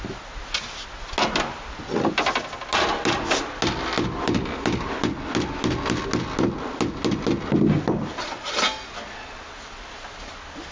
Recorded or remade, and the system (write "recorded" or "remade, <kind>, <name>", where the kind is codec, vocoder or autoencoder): recorded